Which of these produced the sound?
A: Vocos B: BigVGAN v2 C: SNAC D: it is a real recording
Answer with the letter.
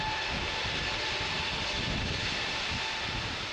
D